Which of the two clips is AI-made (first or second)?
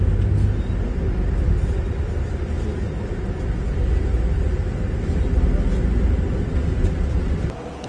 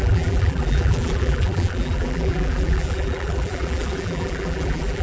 second